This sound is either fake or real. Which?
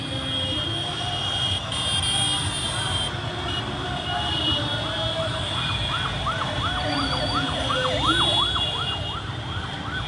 real